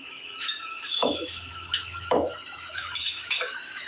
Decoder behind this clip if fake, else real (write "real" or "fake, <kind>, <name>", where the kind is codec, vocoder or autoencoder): fake, autoencoder, DAC-VAE